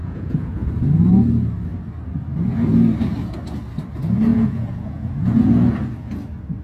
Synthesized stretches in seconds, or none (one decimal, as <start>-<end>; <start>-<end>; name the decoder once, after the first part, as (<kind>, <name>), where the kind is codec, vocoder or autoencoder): 0.0-0.7 (vocoder, Vocos); 4.3-5.7